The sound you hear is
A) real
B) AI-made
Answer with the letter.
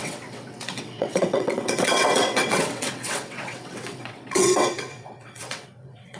B